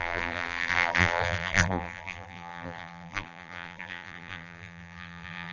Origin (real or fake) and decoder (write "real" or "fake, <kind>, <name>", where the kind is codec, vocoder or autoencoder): fake, vocoder, BigVGAN v2